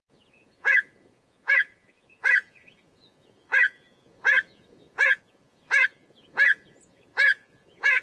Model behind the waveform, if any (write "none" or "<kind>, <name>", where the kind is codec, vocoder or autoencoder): vocoder, Vocos